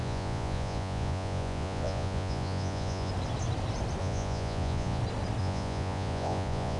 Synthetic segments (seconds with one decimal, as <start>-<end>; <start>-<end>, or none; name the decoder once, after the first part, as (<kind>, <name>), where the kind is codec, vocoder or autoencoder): 0.0-3.1 (vocoder, Vocos); 4.0-5.0; 5.4-6.8